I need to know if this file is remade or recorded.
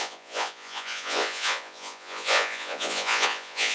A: remade